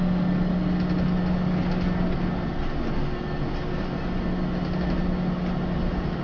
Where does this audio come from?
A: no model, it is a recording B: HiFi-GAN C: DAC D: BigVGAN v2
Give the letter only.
A